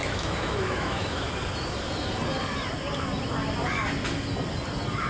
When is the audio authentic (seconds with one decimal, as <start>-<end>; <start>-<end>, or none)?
1.3-5.1